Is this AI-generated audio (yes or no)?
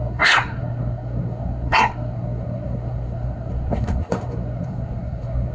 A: yes